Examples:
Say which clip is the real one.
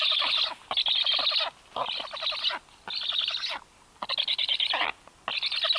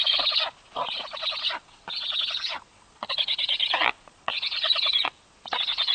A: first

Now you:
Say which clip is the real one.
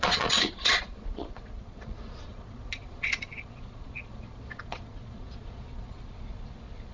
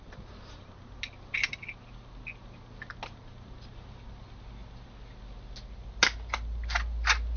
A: second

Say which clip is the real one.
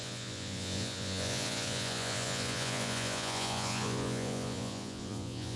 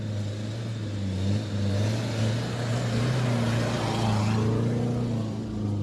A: second